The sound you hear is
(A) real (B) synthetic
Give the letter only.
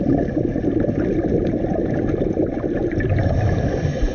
A